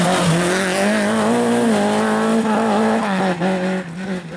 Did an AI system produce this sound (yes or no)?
no